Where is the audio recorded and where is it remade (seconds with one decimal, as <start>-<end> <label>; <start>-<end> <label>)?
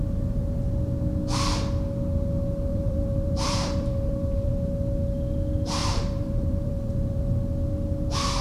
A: 0.0-2.7 recorded; 2.7-4.5 remade; 4.5-5.8 recorded; 5.8-7.2 remade; 7.2-8.4 recorded